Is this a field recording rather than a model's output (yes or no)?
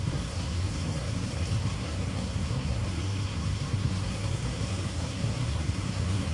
no